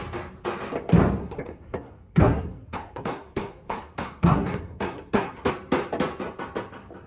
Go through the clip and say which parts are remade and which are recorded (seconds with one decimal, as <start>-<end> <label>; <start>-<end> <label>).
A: 0.0-1.2 recorded; 1.2-5.5 remade; 5.5-7.1 recorded